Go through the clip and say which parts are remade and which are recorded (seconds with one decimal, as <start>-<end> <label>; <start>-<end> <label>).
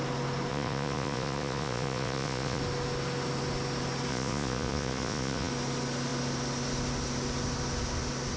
0.0-0.5 recorded; 0.5-2.6 remade; 2.6-4.1 recorded; 4.1-5.5 remade; 5.5-8.4 recorded